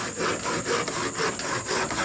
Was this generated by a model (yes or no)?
no